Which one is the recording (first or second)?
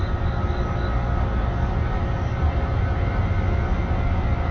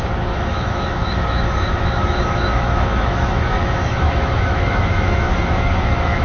first